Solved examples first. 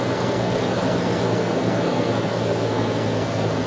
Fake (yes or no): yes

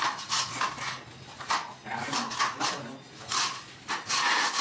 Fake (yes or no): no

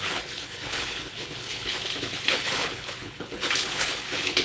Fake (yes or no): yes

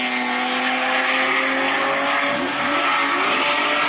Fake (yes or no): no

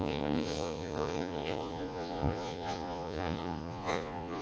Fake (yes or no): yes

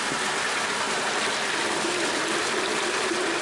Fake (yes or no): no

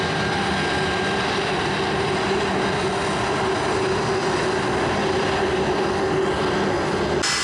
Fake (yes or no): no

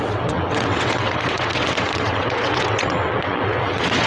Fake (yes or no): yes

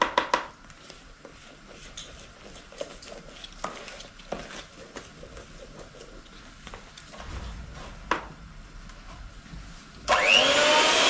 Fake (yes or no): no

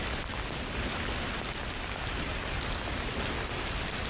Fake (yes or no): no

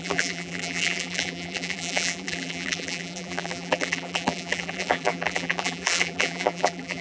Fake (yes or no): yes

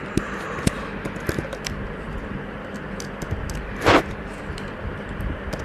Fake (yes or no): no